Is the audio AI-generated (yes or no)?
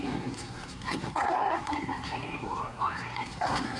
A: yes